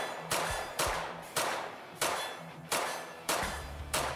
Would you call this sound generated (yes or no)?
yes